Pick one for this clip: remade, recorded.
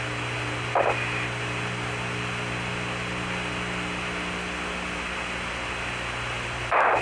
recorded